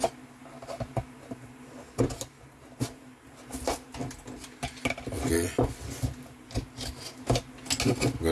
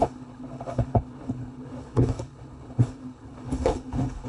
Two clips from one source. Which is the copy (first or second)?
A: second